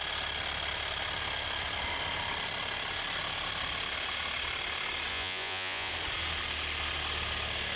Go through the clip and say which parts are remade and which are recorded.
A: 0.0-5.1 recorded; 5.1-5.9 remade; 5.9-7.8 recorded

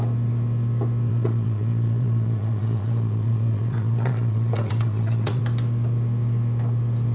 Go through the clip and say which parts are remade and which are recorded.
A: 0.0-1.1 recorded; 1.1-5.4 remade; 5.4-7.1 recorded